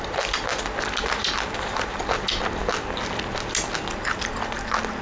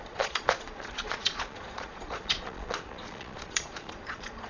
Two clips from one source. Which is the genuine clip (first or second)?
first